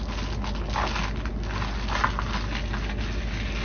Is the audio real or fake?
real